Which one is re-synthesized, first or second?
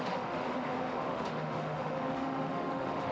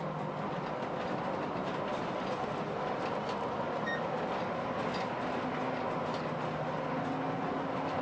first